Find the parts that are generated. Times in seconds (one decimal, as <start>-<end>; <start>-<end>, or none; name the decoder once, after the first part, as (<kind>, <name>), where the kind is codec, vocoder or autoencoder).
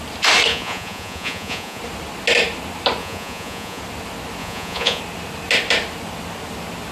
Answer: 0.5-1.8 (vocoder, Vocos); 3.0-3.8; 4.4-5.0